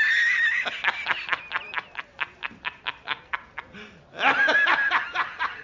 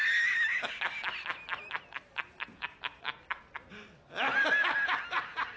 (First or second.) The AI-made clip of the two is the first